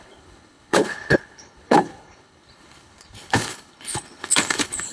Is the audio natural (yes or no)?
no